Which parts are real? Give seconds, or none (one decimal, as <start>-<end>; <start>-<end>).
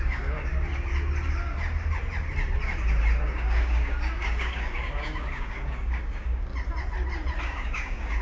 0.7-3.2; 6.5-7.3